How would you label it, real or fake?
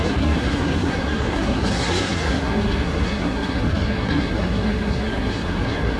fake